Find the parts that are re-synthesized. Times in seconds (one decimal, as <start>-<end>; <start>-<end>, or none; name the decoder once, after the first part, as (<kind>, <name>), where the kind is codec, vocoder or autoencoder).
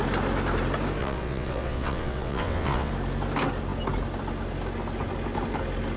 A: 1.0-2.9 (vocoder, WaveNeXt)